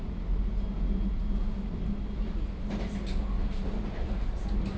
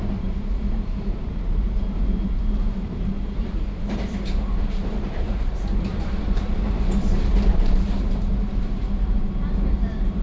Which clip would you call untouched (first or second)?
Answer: first